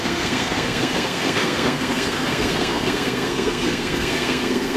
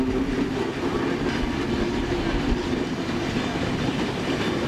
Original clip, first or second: second